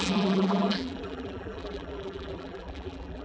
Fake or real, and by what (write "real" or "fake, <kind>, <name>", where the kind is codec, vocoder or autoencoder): fake, vocoder, BigVGAN v2